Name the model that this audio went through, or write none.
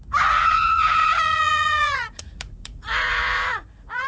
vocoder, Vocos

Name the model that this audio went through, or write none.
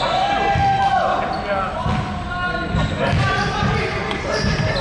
none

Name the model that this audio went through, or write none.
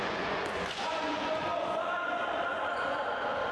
vocoder, Vocos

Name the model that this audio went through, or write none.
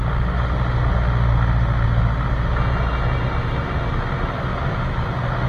none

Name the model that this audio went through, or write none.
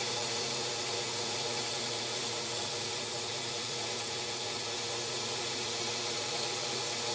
vocoder, Vocos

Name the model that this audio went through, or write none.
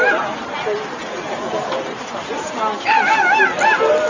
none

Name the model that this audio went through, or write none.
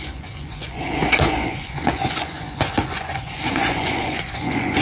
vocoder, Vocos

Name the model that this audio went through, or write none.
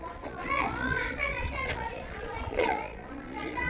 vocoder, Vocos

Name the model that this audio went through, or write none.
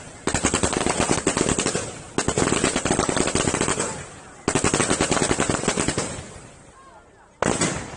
none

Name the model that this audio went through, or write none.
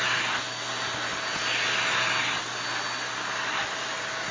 none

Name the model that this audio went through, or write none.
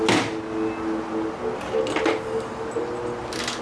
none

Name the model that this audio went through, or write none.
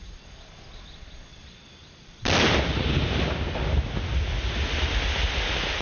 none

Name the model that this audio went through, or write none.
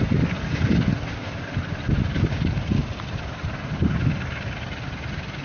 none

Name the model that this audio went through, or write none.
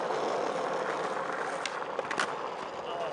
none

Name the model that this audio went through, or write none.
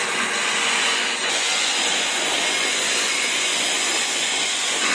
vocoder, Vocos